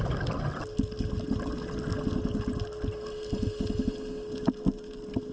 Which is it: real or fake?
real